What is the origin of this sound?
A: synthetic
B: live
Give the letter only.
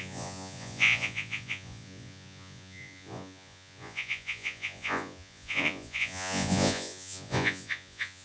A